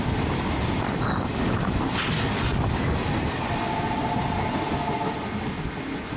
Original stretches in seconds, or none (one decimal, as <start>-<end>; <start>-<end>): 0.0-6.2